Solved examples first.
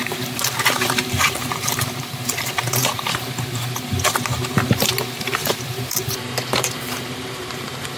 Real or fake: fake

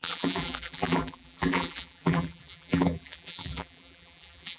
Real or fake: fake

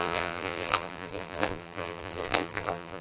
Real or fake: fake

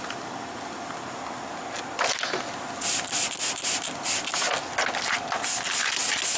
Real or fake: real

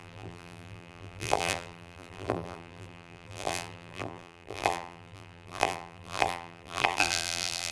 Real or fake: fake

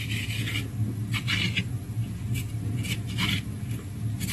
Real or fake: real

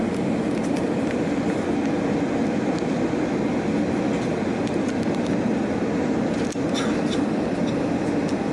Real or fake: real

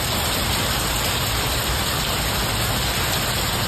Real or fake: fake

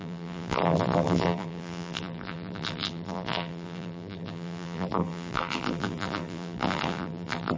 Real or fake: fake